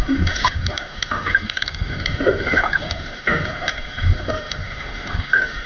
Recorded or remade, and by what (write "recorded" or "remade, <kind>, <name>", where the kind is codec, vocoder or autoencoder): remade, autoencoder, DAC-VAE